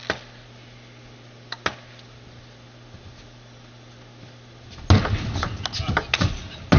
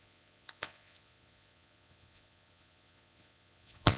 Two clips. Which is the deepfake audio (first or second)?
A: second